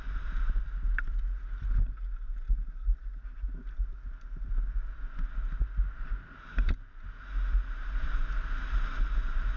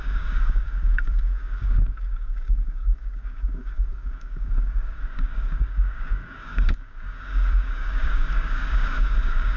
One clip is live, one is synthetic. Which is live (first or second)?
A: first